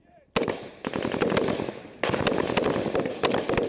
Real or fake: real